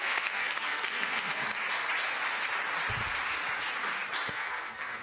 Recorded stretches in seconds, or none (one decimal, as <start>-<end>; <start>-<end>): 1.4-4.3